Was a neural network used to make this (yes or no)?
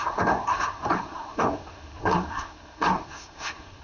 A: yes